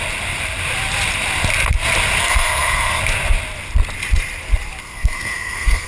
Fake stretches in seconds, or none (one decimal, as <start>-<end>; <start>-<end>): 2.2-3.0; 4.8-5.9